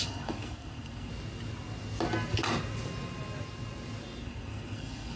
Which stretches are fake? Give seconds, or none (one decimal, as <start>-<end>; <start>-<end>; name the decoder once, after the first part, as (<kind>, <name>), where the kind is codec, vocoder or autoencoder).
0.0-1.1 (codec, SNAC); 4.2-5.2